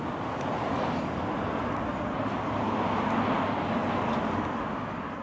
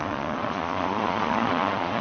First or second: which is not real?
second